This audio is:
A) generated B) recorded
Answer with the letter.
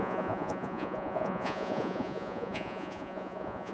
A